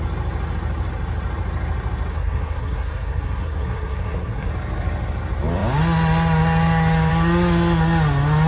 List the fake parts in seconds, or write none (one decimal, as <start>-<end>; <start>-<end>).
2.1-4.5